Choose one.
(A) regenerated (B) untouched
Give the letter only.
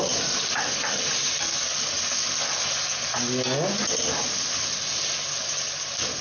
B